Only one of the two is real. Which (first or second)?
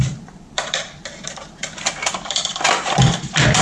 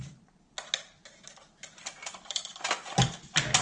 second